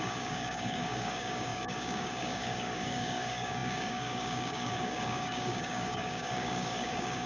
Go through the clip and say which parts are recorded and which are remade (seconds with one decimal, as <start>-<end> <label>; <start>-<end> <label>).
0.0-7.3 remade